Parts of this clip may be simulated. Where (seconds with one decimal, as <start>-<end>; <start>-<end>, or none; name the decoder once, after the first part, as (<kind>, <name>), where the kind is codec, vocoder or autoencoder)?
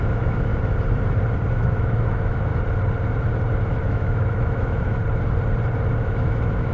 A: 0.0-0.5 (autoencoder, DAC-VAE); 1.5-2.5; 3.8-5.0; 5.9-6.7